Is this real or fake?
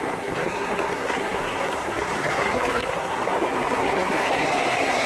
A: fake